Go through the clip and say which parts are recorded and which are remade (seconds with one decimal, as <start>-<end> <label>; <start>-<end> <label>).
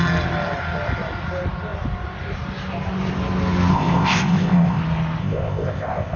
0.0-3.7 recorded; 3.7-4.8 remade; 4.8-5.2 recorded; 5.2-6.2 remade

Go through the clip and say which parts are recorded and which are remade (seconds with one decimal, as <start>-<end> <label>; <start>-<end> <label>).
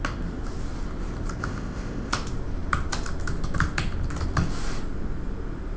0.0-1.4 recorded; 1.4-2.1 remade; 2.1-5.8 recorded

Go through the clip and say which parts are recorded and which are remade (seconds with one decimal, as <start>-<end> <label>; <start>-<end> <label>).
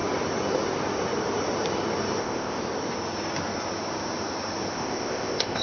0.0-2.2 recorded; 2.2-2.6 remade; 2.6-4.7 recorded; 4.7-5.6 remade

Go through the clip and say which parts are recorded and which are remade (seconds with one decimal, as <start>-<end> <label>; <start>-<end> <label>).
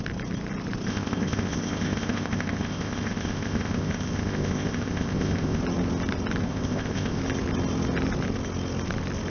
0.0-0.9 recorded; 0.9-5.6 remade; 5.6-6.4 recorded; 6.4-7.2 remade; 7.2-9.3 recorded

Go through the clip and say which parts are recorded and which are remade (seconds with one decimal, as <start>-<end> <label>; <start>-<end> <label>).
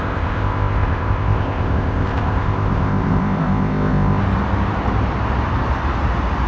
0.0-4.2 remade; 4.2-6.5 recorded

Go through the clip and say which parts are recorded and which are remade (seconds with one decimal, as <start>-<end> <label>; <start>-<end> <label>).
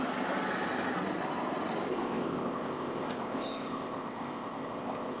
0.0-1.9 recorded; 1.9-5.2 remade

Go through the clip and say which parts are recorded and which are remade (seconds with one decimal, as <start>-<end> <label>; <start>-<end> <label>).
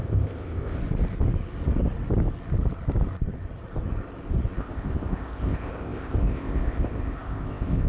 0.0-0.8 remade; 0.8-4.6 recorded; 4.6-7.9 remade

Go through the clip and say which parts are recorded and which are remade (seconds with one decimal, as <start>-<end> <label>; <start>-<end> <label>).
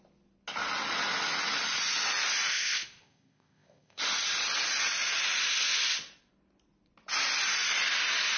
0.0-2.5 recorded; 2.5-4.0 remade; 4.0-8.4 recorded